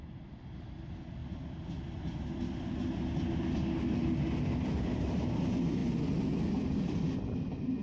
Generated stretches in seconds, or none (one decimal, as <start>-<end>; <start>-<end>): none